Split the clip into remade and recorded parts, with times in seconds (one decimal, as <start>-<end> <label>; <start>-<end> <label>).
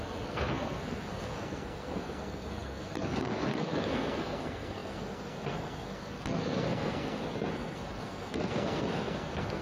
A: 0.0-9.6 remade